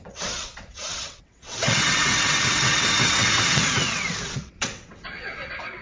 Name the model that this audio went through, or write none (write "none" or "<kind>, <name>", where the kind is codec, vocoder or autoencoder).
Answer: vocoder, WaveNeXt